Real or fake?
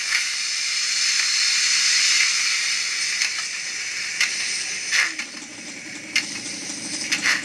real